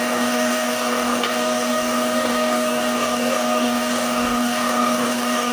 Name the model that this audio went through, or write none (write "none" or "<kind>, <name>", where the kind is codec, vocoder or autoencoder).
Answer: codec, DAC